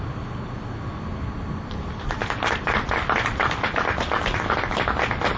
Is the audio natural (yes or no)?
yes